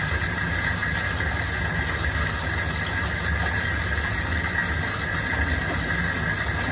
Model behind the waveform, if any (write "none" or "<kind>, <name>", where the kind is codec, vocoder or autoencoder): none